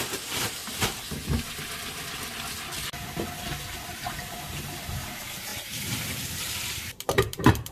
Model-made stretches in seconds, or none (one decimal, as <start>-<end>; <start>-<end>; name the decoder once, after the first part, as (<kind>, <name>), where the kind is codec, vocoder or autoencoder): 0.0-0.6 (vocoder, BigVGAN v2); 4.0-7.7